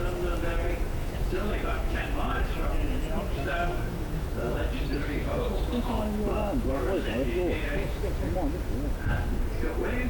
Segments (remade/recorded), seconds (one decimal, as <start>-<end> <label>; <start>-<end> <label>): 0.0-1.0 recorded; 1.0-2.4 remade; 2.4-3.5 recorded; 3.5-4.6 remade; 4.6-5.0 recorded; 5.0-8.1 remade; 8.1-10.1 recorded